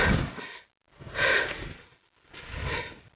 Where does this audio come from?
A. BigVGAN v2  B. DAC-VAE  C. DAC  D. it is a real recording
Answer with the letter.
D